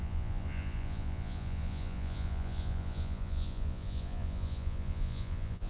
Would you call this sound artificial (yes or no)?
yes